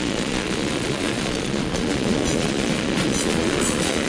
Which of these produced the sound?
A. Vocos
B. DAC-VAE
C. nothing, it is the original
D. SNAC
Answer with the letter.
A